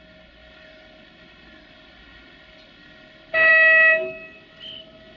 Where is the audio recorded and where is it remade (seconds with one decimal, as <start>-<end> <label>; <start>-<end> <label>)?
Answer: 0.0-5.2 recorded